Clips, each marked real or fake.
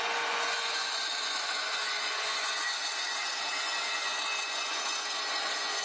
fake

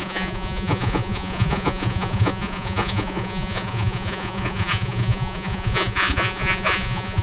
fake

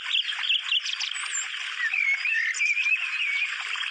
real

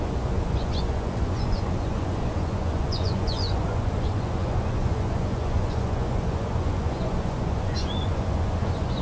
fake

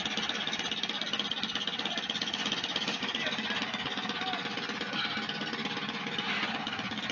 real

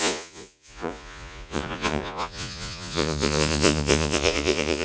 fake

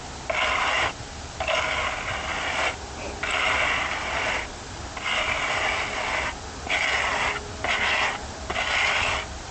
real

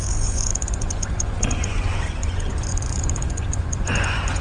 fake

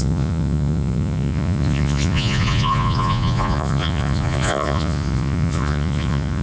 fake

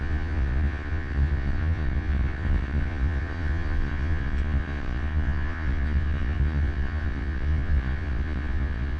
fake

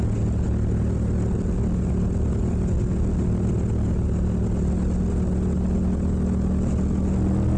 real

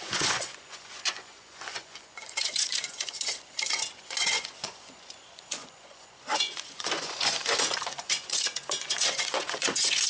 fake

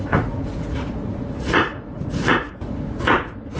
fake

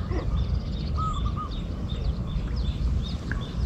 real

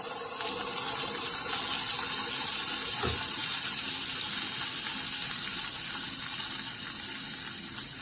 real